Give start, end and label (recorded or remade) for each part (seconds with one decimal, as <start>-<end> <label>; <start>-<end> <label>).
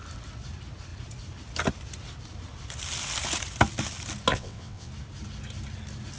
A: 0.0-4.3 recorded; 4.3-4.9 remade; 4.9-6.2 recorded